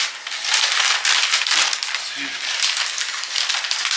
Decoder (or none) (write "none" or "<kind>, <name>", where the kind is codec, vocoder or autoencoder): none